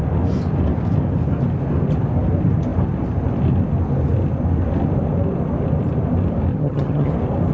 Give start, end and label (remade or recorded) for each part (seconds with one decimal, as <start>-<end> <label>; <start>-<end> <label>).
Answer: 0.0-6.5 recorded; 6.5-7.1 remade; 7.1-7.5 recorded